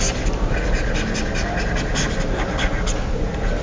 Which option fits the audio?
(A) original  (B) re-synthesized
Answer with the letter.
A